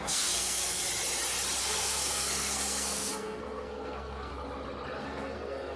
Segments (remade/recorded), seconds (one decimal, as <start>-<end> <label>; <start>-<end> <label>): 0.0-0.8 remade; 0.8-1.6 recorded; 1.6-4.3 remade; 4.3-5.0 recorded; 5.0-5.8 remade